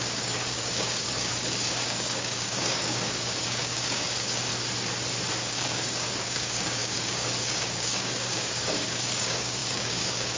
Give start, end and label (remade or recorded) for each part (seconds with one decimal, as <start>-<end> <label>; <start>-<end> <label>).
0.0-4.5 remade; 4.5-5.4 recorded; 5.4-10.4 remade